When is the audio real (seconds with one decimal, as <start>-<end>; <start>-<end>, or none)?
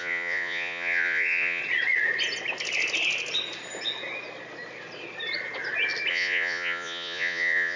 1.6-6.1